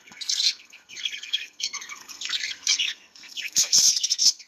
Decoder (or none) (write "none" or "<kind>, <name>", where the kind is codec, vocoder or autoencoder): codec, SNAC